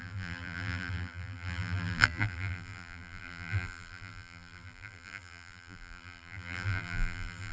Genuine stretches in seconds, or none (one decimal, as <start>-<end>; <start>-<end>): none